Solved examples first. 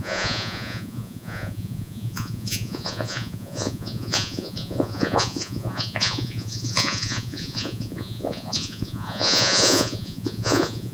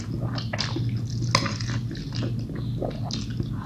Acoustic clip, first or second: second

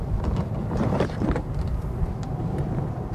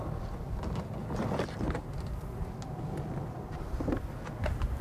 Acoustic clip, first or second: second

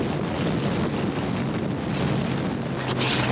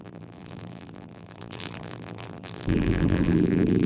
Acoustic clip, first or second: first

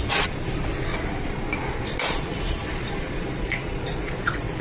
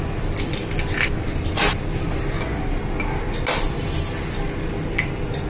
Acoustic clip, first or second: second